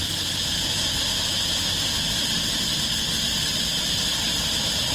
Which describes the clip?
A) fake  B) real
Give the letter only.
A